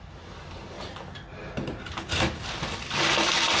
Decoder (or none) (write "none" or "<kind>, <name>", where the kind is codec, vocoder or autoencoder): none